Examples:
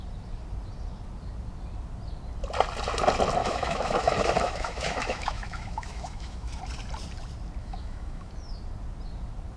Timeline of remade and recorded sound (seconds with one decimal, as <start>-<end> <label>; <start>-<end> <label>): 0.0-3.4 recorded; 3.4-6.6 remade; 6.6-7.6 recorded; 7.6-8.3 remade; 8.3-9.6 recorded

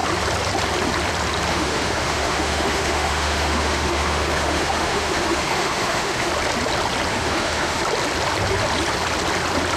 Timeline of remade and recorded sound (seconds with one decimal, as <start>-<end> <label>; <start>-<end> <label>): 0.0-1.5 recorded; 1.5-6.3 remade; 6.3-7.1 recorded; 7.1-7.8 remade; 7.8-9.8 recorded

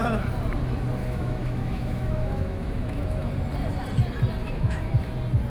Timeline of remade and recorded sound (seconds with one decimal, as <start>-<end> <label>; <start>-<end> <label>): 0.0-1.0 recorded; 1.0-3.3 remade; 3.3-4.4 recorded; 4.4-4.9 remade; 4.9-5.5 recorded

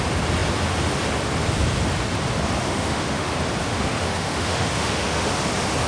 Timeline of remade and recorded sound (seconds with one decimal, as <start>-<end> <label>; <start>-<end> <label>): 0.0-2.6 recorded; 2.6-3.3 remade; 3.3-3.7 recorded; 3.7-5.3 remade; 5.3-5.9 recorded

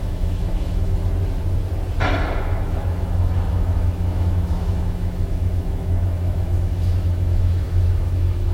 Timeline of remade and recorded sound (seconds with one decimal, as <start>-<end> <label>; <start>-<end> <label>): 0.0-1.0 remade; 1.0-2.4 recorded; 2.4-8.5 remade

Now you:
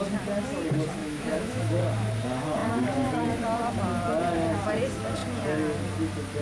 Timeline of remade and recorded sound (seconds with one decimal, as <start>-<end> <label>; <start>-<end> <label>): 0.0-1.0 recorded; 1.0-1.8 remade; 1.8-6.4 recorded